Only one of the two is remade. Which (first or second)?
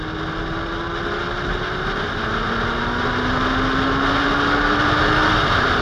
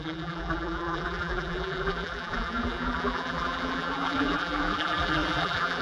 second